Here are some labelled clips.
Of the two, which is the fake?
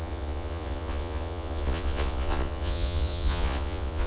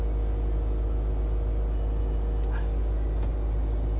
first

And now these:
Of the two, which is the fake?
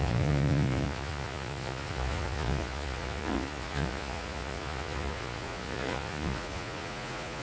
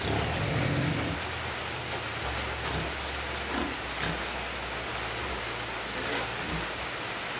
first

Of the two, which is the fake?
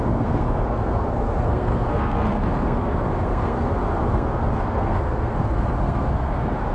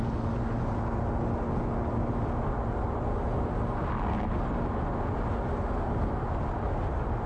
first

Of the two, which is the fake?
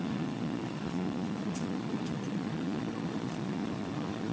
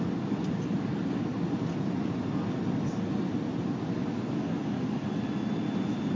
first